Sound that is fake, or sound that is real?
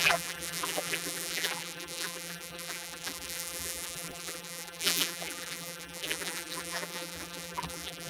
fake